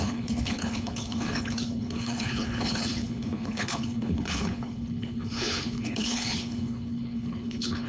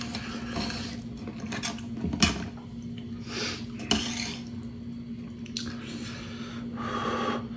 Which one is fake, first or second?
first